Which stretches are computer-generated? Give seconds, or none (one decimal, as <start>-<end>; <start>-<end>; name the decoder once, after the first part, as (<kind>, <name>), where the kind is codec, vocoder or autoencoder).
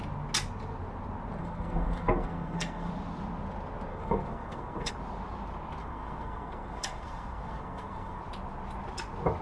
1.4-2.9 (codec, SNAC); 3.9-4.9; 5.8-8.2